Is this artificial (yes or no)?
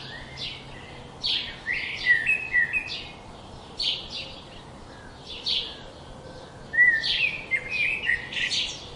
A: no